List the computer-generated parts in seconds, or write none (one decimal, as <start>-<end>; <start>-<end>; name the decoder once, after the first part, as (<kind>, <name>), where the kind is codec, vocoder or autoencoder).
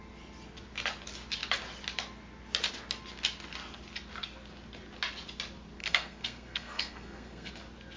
5.8-7.5 (codec, SNAC)